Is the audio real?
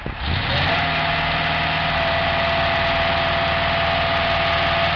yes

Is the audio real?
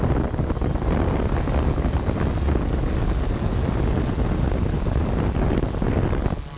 yes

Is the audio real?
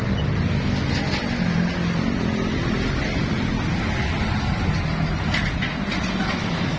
yes